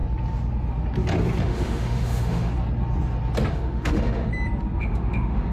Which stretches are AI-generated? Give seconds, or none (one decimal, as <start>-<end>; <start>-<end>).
1.4-2.5; 3.5-4.3; 4.8-5.5